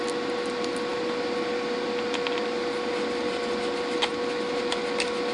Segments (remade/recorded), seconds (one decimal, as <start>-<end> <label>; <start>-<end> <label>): 0.0-5.3 recorded